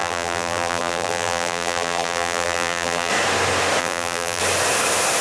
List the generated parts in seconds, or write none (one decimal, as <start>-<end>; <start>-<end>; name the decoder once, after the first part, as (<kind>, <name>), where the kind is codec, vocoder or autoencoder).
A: 0.0-3.1 (vocoder, BigVGAN v2); 3.8-4.4